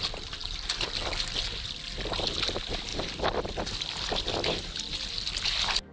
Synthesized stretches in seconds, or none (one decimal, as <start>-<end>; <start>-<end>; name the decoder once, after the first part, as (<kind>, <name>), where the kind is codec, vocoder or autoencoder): none